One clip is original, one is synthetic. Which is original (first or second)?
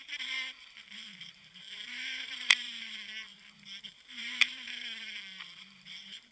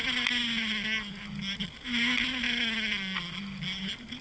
second